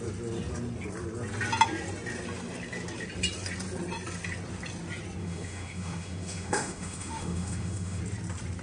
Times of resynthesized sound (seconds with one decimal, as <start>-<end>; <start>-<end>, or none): 5.2-8.0